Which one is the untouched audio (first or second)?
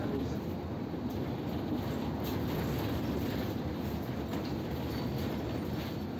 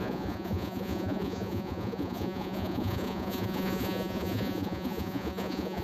first